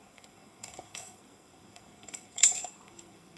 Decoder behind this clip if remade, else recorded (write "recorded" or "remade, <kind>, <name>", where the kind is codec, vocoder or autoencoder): remade, codec, SNAC